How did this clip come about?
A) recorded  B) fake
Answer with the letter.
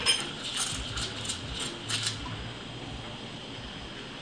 A